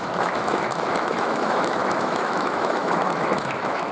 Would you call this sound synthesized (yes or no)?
yes